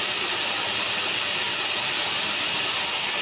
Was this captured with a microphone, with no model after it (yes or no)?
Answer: yes